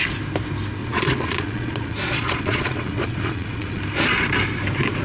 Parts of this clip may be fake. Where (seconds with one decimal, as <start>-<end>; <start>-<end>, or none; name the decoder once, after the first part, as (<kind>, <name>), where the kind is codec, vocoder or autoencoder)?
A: 0.8-3.8 (vocoder, Vocos)